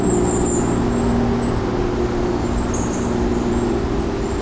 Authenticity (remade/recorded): recorded